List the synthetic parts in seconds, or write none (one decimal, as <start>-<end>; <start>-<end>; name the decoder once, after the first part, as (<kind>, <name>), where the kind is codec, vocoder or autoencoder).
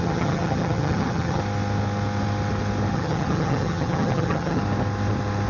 0.0-1.4 (vocoder, HiFi-GAN); 2.9-4.6